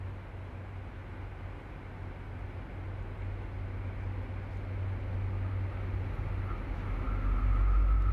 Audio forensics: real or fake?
real